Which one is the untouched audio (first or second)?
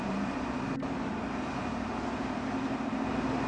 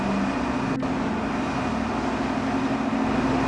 second